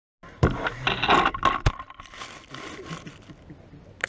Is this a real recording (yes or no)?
yes